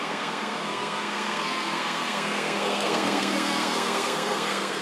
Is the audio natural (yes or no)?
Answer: no